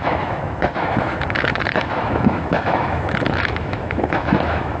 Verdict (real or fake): fake